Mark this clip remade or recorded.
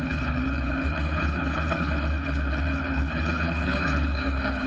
remade